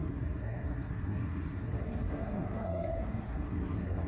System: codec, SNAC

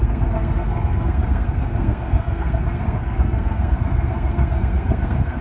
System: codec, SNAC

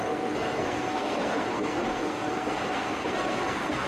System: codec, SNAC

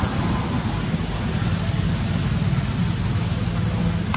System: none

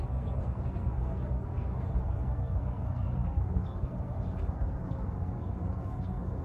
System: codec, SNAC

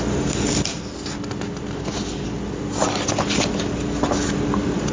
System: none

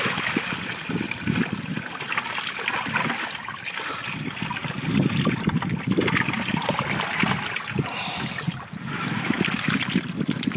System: none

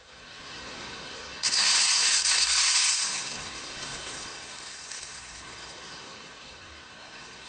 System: codec, SNAC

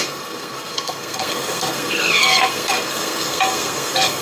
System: codec, SNAC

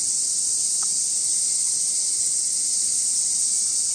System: none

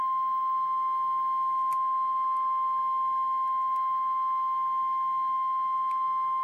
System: none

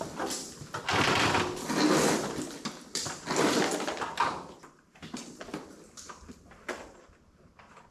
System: none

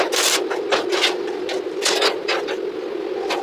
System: none